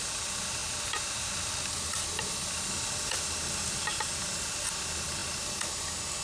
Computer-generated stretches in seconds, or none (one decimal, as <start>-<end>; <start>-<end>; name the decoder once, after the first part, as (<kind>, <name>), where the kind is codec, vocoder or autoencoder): none